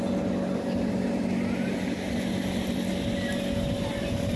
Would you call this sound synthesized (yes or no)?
no